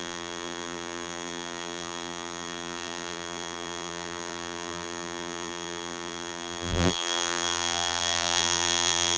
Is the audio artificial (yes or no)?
yes